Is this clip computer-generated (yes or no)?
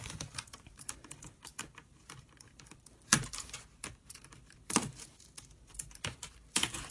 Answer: yes